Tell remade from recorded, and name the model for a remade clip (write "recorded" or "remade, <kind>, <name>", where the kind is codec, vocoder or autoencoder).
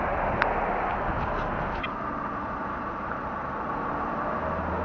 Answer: recorded